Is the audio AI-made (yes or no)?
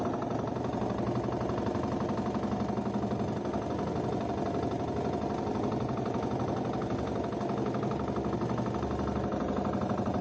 no